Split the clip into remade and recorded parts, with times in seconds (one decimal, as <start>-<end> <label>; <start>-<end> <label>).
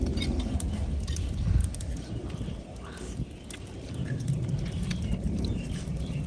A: 0.0-1.6 recorded; 1.6-2.1 remade; 2.1-6.3 recorded